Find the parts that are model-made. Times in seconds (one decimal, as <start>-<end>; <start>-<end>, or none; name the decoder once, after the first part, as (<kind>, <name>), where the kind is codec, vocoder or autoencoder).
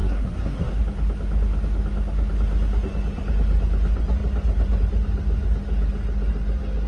0.0-0.8 (codec, SNAC)